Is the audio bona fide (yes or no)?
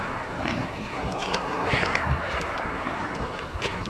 no